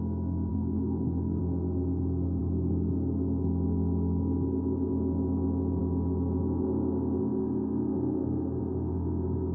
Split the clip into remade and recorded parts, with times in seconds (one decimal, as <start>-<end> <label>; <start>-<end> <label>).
0.0-0.5 recorded; 0.5-1.4 remade; 1.4-9.5 recorded